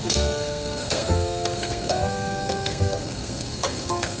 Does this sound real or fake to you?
fake